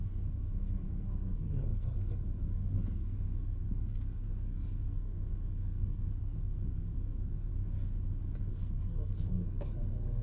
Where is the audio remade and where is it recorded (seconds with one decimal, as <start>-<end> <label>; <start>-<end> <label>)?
0.0-7.5 remade; 7.5-8.5 recorded; 8.5-10.2 remade